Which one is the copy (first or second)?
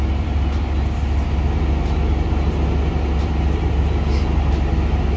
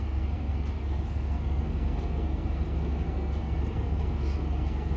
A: second